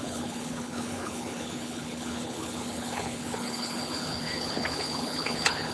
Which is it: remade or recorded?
remade